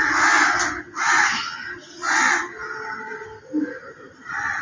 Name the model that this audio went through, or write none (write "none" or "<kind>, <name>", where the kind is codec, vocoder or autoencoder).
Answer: none